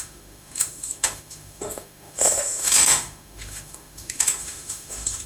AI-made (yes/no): yes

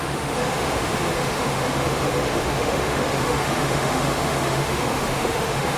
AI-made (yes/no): yes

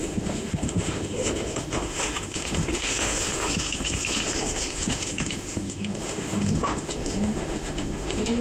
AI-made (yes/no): yes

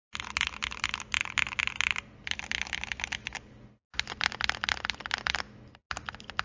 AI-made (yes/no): no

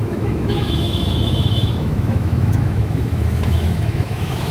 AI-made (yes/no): yes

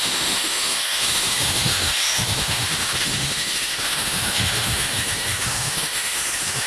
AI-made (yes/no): yes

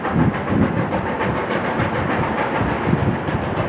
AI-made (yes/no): no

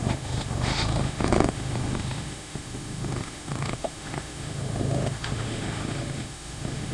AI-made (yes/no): yes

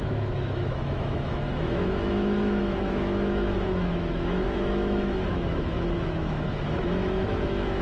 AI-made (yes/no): yes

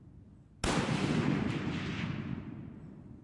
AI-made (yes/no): no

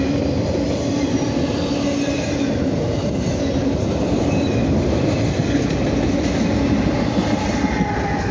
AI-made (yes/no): no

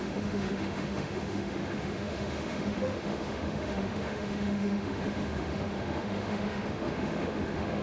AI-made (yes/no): yes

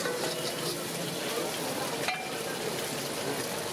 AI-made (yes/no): no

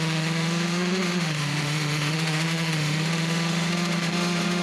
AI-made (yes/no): yes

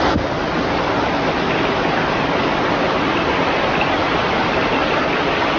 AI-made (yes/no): no